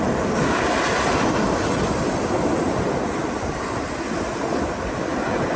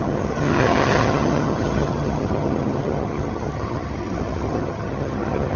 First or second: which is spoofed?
second